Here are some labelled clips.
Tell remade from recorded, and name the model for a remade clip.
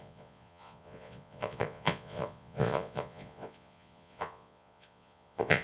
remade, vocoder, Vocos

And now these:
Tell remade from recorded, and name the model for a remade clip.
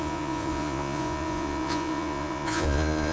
remade, vocoder, Vocos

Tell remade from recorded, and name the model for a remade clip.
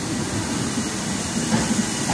recorded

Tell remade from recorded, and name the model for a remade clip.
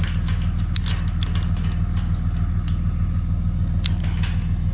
recorded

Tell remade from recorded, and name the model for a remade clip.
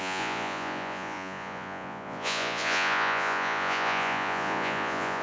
remade, vocoder, Vocos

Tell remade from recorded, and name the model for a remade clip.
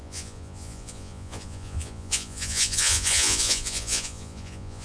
remade, vocoder, Vocos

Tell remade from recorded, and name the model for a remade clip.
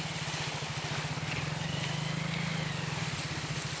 recorded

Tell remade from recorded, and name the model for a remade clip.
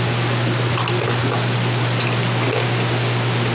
recorded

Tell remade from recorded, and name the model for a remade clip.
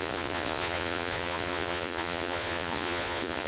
remade, vocoder, Vocos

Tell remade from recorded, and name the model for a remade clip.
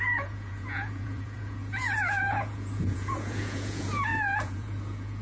remade, vocoder, Vocos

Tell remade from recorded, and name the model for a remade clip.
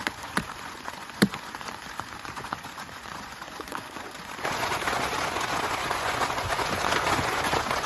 remade, vocoder, Vocos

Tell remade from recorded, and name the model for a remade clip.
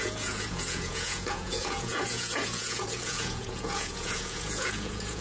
remade, vocoder, Vocos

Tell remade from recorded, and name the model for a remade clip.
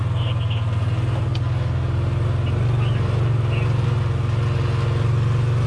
recorded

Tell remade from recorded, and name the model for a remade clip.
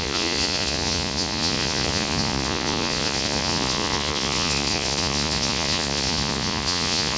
remade, vocoder, Vocos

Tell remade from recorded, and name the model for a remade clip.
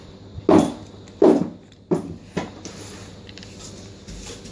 recorded